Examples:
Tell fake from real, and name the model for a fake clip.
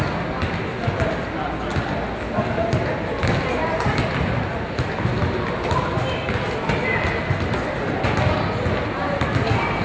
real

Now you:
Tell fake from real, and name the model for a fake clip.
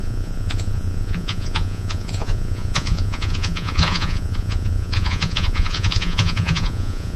fake, vocoder, Vocos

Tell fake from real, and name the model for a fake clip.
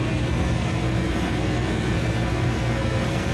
fake, codec, SNAC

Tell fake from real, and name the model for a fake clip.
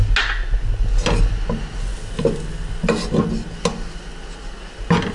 real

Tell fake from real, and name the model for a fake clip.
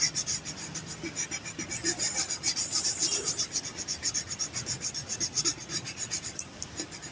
fake, vocoder, BigVGAN v2